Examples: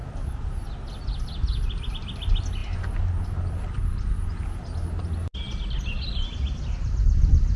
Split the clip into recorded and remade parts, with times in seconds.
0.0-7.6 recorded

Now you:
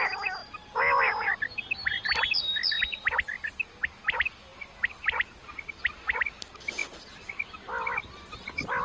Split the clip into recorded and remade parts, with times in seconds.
0.0-8.8 recorded

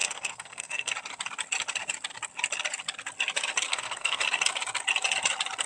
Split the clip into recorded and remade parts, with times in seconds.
0.0-0.9 remade; 0.9-3.7 recorded; 3.7-4.2 remade; 4.2-5.7 recorded

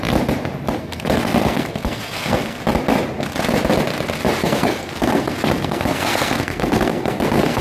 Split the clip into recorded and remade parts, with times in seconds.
0.0-0.8 recorded; 0.8-2.6 remade; 2.6-4.4 recorded; 4.4-7.6 remade

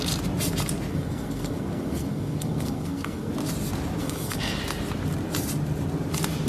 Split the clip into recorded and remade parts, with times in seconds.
0.0-0.9 recorded; 0.9-3.3 remade; 3.3-4.0 recorded; 4.0-4.6 remade; 4.6-6.5 recorded

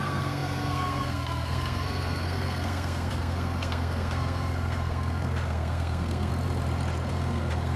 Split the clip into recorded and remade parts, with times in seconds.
0.0-6.3 remade; 6.3-7.1 recorded; 7.1-7.8 remade